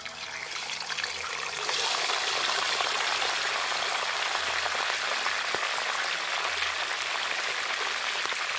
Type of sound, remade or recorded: recorded